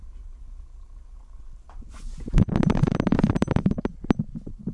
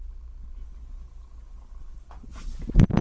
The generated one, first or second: first